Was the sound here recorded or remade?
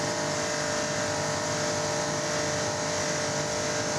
recorded